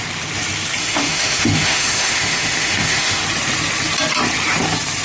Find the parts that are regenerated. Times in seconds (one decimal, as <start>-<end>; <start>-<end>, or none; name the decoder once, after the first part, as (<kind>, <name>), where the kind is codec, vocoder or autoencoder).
0.8-3.2 (autoencoder, DAC-VAE)